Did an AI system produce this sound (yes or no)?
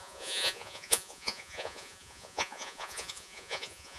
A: yes